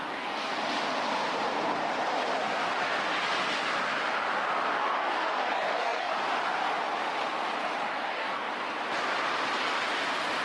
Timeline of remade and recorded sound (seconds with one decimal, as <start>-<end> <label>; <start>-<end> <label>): 0.0-0.5 remade; 0.5-4.8 recorded; 4.8-6.1 remade; 6.1-7.9 recorded; 7.9-8.5 remade; 8.5-10.4 recorded